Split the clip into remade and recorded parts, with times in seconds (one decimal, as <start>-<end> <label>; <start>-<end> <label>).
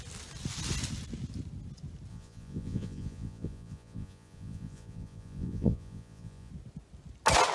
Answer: 0.0-2.1 recorded; 2.1-6.5 remade; 6.5-7.5 recorded